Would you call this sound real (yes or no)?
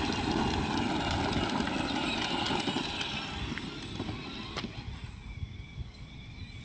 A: yes